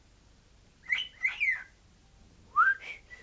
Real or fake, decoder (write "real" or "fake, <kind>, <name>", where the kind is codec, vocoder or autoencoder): real